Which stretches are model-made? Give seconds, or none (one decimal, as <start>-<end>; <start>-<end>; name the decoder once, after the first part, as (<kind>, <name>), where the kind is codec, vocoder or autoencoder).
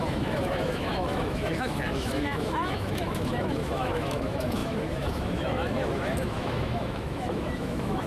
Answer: 0.0-8.1 (autoencoder, DAC-VAE)